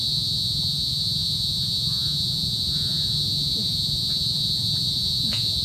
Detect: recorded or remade remade